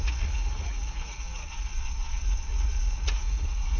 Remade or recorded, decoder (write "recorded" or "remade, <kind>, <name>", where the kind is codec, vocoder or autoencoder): remade, vocoder, Vocos